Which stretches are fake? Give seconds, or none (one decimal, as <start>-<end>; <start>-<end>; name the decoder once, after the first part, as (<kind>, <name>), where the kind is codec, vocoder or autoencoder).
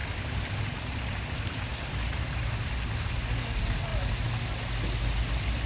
none